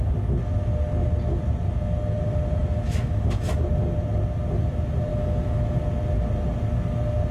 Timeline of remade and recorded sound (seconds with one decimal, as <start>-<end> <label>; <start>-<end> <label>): 0.0-2.6 recorded; 2.6-3.4 remade; 3.4-5.1 recorded; 5.1-5.8 remade; 5.8-7.3 recorded